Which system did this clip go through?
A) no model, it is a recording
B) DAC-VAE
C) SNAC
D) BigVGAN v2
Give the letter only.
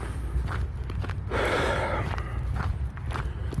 D